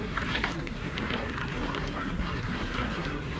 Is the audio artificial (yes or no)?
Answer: yes